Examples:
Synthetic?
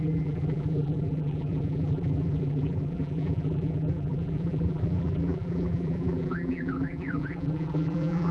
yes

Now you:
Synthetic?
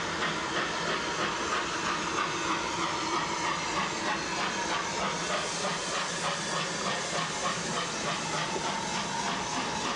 no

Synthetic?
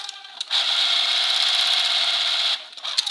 no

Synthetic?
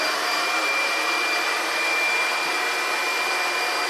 yes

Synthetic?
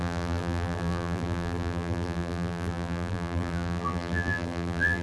yes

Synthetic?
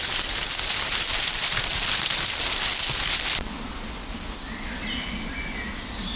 no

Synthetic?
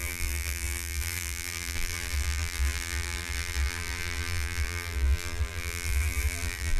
yes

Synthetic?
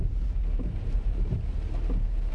yes